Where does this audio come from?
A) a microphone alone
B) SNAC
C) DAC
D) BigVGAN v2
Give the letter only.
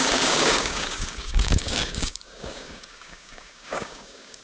C